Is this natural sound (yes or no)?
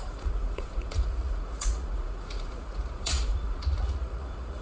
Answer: no